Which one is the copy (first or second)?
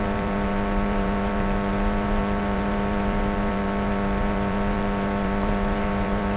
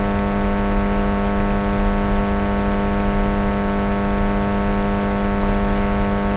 first